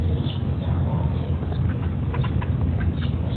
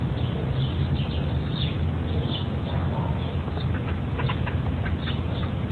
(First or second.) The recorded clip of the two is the second